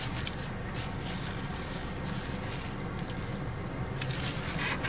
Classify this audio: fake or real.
real